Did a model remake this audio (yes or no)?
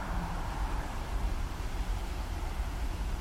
yes